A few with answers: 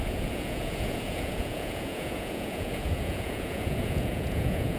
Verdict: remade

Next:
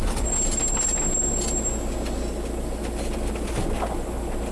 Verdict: recorded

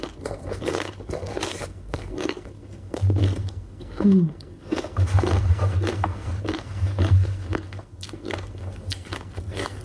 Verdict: remade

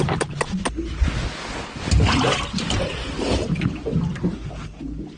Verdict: recorded